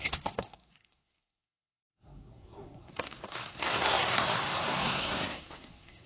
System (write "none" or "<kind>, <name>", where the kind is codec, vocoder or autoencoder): codec, SNAC